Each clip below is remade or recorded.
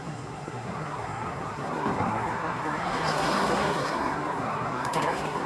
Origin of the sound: remade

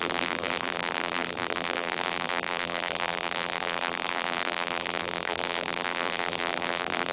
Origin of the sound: remade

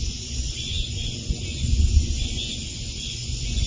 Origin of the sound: remade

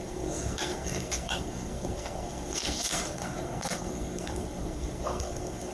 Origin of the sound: remade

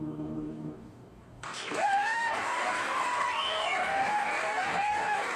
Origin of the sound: remade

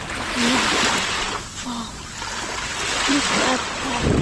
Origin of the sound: recorded